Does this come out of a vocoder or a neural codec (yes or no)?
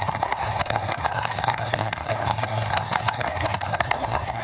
yes